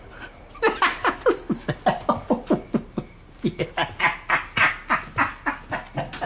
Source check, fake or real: real